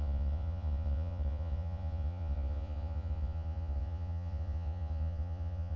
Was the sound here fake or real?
fake